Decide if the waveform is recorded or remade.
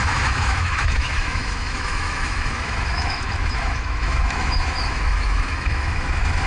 remade